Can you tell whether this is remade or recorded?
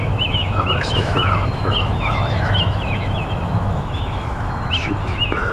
remade